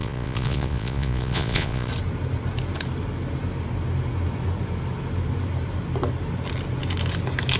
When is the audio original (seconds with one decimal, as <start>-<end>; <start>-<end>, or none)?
1.9-7.6